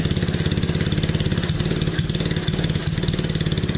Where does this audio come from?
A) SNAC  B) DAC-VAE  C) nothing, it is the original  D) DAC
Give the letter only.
C